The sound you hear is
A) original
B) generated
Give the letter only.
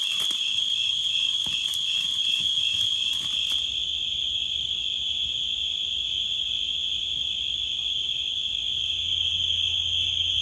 A